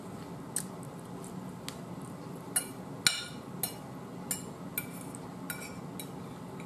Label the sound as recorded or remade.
recorded